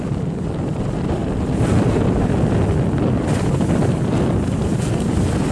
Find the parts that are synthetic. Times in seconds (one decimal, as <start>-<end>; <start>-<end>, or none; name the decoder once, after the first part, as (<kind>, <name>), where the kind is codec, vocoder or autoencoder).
none